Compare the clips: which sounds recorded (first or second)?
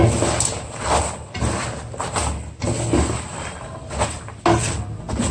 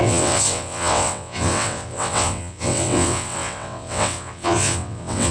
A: first